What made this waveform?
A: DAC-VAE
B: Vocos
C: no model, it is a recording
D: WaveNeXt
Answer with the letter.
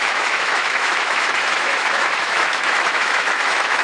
A